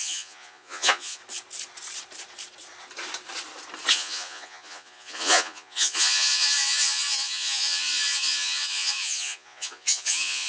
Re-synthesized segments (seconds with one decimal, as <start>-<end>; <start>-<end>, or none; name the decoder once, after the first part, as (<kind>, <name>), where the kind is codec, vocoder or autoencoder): 0.0-1.2 (vocoder, Vocos); 3.9-10.5